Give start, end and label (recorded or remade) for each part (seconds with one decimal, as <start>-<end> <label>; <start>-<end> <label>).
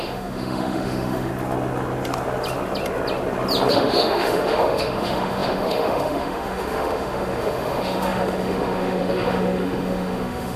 0.0-1.3 remade; 1.3-3.7 recorded; 3.7-10.6 remade